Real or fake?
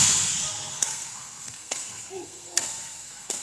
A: fake